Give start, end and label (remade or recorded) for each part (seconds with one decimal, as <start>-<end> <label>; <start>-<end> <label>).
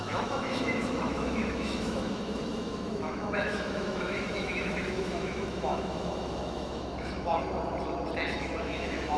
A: 0.0-7.3 remade; 7.3-8.3 recorded; 8.3-9.2 remade